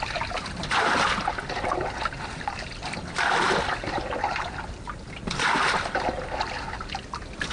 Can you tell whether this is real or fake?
real